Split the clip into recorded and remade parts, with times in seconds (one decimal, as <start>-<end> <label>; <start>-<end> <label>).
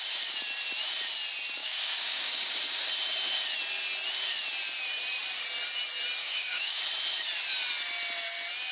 0.0-1.6 recorded; 1.6-2.4 remade; 2.4-6.2 recorded; 6.2-6.8 remade; 6.8-8.7 recorded